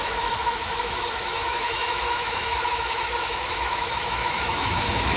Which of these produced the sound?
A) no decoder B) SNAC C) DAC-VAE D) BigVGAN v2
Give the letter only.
C